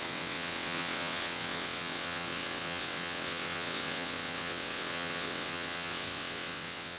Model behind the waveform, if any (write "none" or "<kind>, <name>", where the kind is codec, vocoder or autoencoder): vocoder, WaveNeXt